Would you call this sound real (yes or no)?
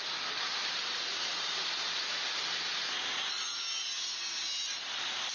yes